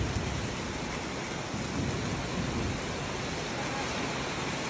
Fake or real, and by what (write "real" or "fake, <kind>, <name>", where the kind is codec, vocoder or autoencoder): real